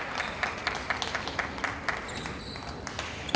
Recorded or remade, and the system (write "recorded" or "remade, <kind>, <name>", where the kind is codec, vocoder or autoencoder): recorded